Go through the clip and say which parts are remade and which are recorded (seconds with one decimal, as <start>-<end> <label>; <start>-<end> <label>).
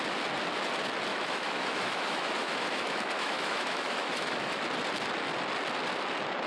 0.0-1.1 recorded; 1.1-4.6 remade; 4.6-6.5 recorded